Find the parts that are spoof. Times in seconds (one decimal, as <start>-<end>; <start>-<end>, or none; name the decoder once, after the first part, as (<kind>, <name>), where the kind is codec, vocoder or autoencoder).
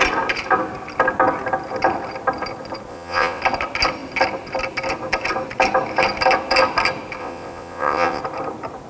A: 2.9-3.4 (vocoder, WaveNeXt); 7.2-8.2